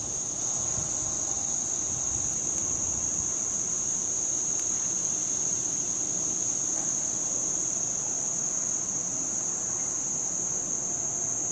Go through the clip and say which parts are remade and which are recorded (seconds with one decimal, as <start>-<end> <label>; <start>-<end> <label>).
0.0-11.5 recorded